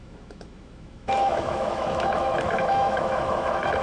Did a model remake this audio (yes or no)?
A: yes